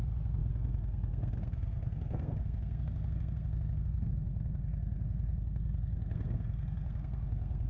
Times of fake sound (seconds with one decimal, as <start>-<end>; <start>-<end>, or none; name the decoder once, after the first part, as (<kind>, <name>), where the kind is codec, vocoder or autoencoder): 0.0-7.7 (codec, SNAC)